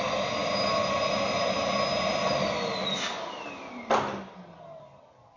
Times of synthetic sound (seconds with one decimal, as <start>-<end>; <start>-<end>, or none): none